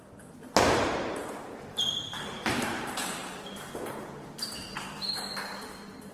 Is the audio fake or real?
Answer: fake